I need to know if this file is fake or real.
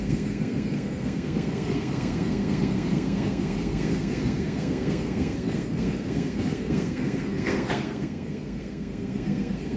fake